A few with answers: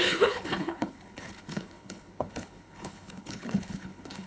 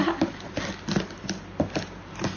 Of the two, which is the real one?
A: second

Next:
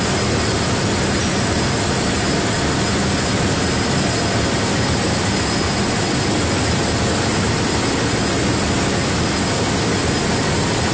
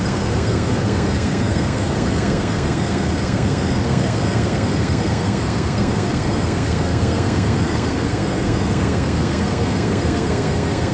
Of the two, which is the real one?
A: first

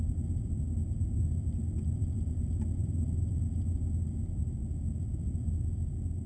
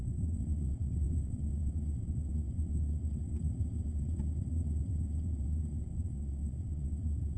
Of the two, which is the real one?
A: first